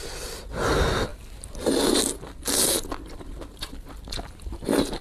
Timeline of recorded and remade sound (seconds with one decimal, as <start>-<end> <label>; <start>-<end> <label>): 0.0-5.0 recorded